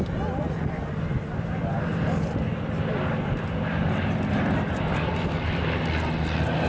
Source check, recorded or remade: recorded